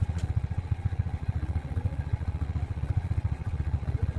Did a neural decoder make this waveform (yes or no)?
yes